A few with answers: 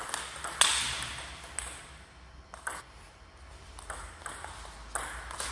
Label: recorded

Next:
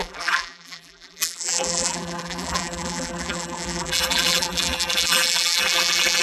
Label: remade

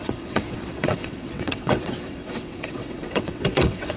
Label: remade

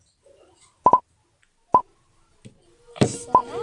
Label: recorded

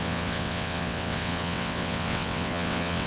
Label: remade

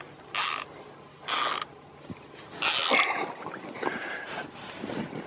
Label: recorded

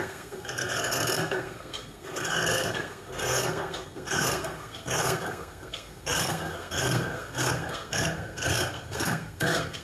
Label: remade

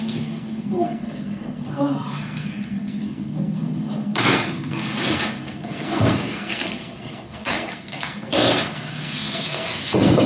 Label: remade